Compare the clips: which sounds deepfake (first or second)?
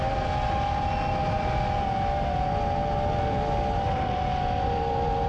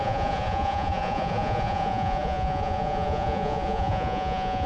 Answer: second